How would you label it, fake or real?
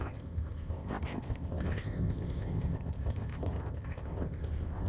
fake